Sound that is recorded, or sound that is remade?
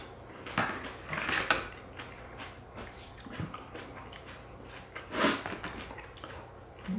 recorded